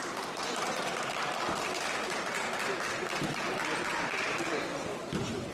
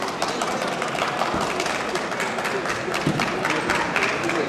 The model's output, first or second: first